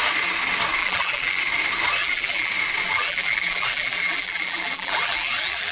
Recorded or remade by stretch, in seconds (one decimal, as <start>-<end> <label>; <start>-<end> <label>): 0.0-0.8 recorded; 0.8-1.4 remade; 1.4-2.0 recorded; 2.0-2.5 remade; 2.5-2.9 recorded; 2.9-5.7 remade